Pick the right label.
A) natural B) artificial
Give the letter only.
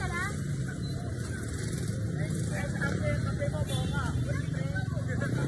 A